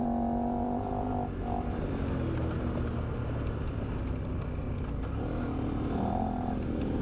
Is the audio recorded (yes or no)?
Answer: yes